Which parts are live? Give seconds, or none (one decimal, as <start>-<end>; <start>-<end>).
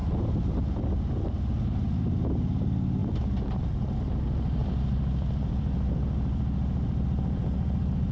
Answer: 1.4-4.6